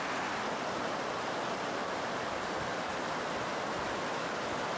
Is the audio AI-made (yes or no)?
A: no